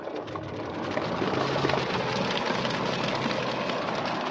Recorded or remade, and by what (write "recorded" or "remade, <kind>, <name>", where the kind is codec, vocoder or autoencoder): recorded